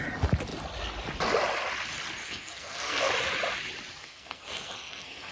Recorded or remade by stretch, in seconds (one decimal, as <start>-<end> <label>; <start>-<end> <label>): 0.0-2.2 recorded; 2.2-3.1 remade; 3.1-4.0 recorded; 4.0-5.3 remade